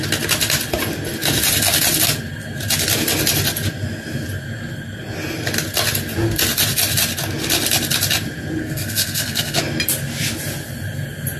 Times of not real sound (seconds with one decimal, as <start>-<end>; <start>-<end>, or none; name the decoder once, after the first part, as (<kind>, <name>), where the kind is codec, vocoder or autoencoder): 8.6-9.6 (codec, SNAC)

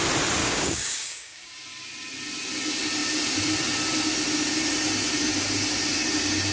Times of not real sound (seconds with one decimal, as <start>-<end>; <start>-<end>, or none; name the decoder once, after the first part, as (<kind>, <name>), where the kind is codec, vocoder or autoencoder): 0.4-1.5 (codec, DAC)